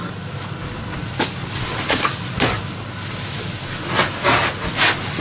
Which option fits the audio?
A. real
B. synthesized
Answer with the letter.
A